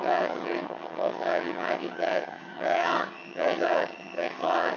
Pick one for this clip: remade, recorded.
remade